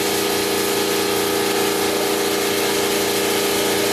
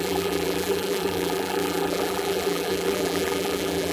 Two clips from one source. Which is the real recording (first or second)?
first